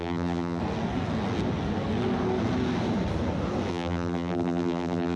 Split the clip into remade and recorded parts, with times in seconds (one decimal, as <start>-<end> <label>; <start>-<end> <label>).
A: 0.0-0.6 remade; 0.6-3.7 recorded; 3.7-5.2 remade

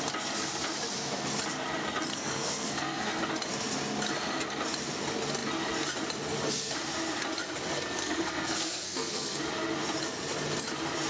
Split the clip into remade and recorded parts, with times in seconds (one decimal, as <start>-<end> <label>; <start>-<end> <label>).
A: 0.0-2.1 recorded; 2.1-3.3 remade; 3.3-8.0 recorded; 8.0-9.4 remade; 9.4-11.1 recorded

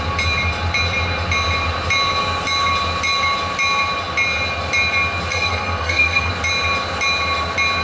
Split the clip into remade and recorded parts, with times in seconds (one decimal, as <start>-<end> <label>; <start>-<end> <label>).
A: 0.0-5.3 recorded; 5.3-6.3 remade; 6.3-7.8 recorded

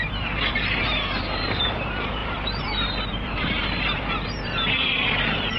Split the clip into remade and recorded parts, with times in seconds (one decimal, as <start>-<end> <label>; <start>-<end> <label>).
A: 0.0-5.6 remade

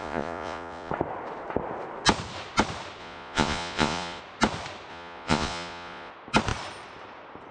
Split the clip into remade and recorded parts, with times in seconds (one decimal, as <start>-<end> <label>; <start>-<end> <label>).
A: 0.0-0.9 remade; 0.9-3.0 recorded; 3.0-4.2 remade; 4.2-4.9 recorded; 4.9-6.1 remade; 6.1-7.5 recorded

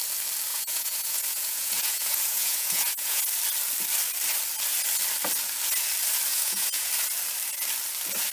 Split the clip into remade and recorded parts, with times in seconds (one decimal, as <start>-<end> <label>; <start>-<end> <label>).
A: 0.0-0.5 recorded; 0.5-3.2 remade; 3.2-6.3 recorded; 6.3-6.9 remade; 6.9-8.3 recorded

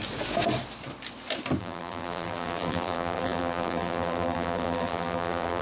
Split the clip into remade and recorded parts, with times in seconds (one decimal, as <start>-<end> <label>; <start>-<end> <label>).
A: 0.0-1.6 recorded; 1.6-5.6 remade